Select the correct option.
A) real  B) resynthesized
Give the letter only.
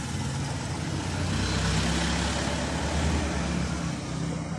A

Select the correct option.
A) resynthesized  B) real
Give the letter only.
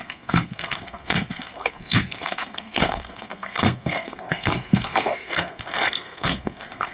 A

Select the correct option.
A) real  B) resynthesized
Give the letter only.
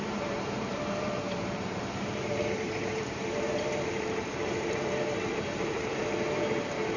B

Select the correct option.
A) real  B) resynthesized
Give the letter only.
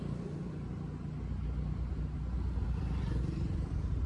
A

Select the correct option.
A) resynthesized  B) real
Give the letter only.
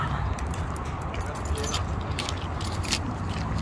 B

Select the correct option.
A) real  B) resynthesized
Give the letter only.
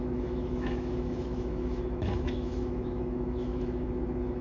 B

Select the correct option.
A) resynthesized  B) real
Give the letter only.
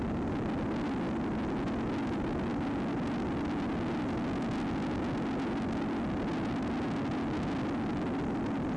B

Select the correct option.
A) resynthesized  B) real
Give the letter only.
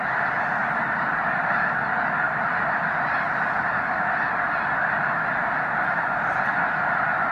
B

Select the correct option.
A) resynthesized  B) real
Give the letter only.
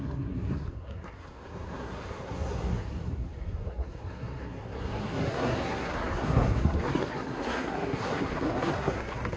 A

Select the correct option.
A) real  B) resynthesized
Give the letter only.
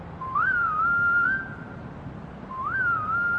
A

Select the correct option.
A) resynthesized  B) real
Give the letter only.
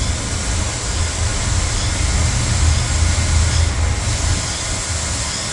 B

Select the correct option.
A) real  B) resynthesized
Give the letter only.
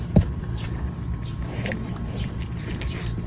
B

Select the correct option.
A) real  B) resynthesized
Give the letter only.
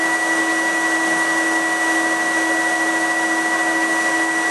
A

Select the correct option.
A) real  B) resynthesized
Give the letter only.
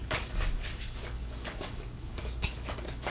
B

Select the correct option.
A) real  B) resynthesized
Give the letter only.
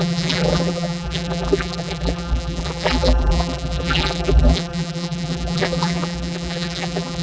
B